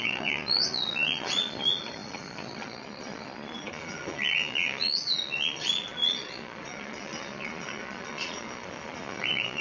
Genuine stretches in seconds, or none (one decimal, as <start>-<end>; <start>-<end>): none